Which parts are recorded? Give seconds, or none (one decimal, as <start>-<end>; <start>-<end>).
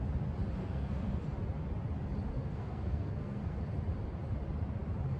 0.0-0.6; 1.2-2.3; 3.6-5.2